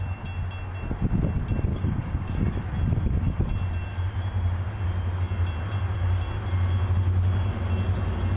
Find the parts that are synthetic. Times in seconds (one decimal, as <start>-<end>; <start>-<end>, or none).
1.7-2.6